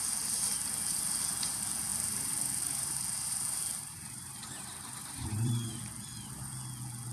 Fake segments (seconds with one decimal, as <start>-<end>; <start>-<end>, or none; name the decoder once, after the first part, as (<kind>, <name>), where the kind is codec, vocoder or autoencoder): 1.9-5.7 (vocoder, BigVGAN v2)